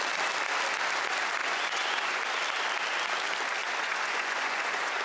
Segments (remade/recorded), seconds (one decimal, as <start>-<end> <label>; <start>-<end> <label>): 0.0-1.4 recorded; 1.4-2.2 remade; 2.2-3.6 recorded; 3.6-5.0 remade